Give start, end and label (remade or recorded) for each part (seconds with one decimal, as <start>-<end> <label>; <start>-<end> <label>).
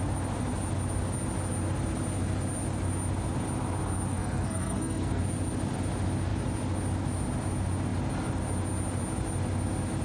0.0-4.1 recorded; 4.1-5.2 remade; 5.2-10.0 recorded